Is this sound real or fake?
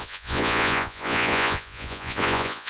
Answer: fake